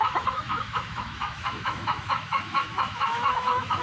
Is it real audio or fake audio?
fake